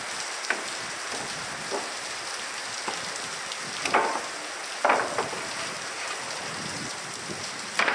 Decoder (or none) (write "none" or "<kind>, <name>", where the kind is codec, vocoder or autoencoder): none